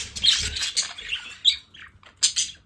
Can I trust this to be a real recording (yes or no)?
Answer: yes